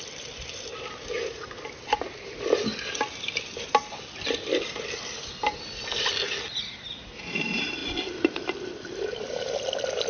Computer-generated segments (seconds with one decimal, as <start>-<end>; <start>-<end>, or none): 0.7-2.4